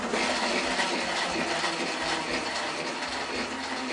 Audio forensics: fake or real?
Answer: real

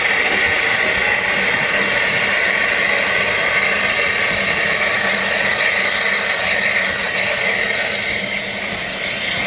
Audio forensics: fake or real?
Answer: real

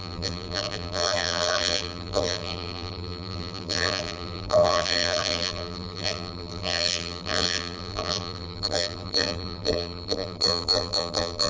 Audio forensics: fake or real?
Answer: fake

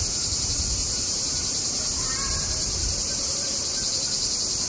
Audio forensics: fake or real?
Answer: fake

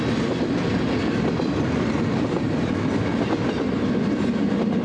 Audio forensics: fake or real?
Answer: real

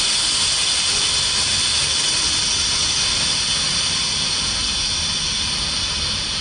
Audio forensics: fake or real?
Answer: real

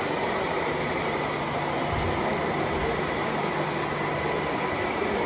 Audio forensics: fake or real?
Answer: real